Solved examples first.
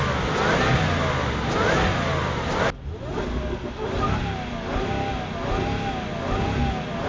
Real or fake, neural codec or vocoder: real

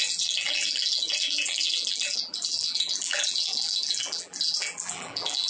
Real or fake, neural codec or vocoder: fake, vocoder, BigVGAN v2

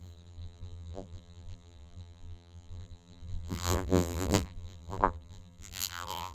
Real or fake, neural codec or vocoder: fake, vocoder, BigVGAN v2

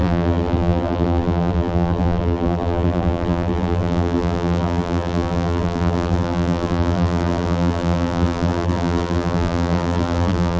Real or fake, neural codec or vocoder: fake, vocoder, BigVGAN v2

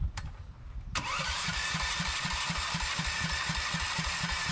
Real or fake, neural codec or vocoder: fake, vocoder, BigVGAN v2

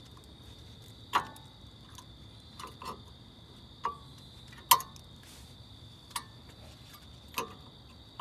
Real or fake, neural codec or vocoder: real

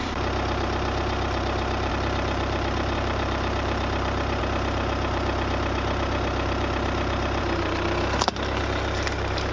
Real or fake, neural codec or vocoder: fake, vocoder, BigVGAN v2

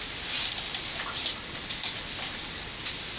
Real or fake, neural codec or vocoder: real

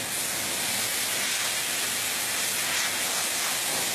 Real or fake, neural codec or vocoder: real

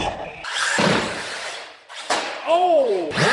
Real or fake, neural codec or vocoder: fake, vocoder, BigVGAN v2